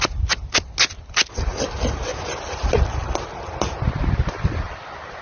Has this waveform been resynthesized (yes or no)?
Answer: no